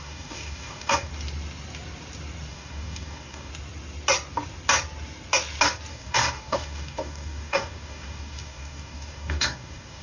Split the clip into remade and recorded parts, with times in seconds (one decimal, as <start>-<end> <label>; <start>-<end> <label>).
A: 0.0-1.1 remade; 1.1-2.5 recorded; 2.5-3.5 remade; 3.5-5.9 recorded; 5.9-10.0 remade